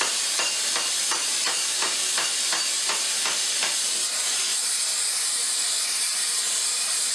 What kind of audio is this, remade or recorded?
remade